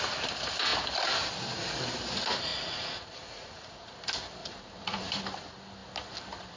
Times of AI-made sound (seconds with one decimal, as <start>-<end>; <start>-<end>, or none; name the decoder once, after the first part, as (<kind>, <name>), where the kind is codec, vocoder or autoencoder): 2.5-3.9 (vocoder, Vocos); 4.4-5.1